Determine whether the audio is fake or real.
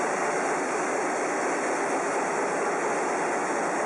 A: real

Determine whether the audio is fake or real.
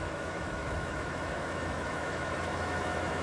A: fake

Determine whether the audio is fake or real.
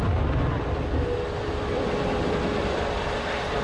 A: real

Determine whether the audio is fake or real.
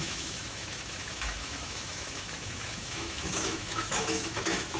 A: fake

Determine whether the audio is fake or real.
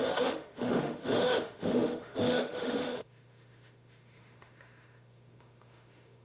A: fake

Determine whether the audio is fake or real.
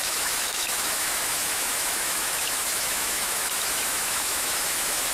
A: fake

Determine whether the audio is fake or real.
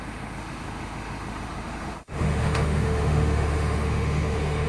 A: fake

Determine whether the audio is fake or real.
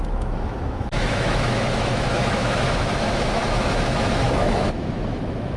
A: fake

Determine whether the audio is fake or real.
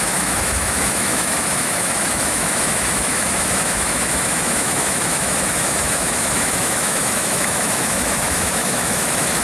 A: fake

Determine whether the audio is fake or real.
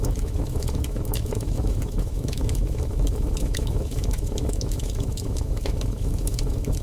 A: fake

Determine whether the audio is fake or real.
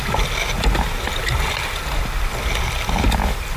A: real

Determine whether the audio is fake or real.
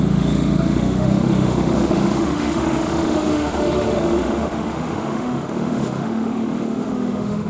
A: fake